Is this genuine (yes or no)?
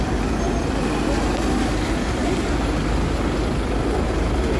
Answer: yes